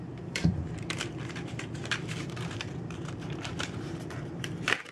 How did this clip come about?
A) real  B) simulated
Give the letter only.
B